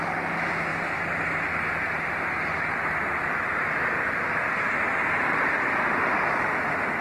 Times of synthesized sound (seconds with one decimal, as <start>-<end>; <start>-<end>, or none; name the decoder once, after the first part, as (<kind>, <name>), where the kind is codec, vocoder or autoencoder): none